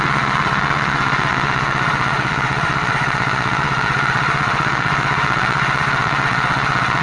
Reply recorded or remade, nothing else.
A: remade